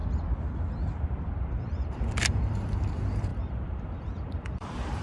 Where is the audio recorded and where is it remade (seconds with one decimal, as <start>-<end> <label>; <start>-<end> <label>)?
0.0-1.6 recorded; 1.6-5.0 remade